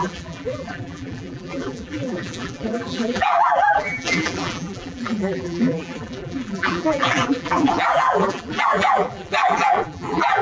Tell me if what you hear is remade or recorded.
remade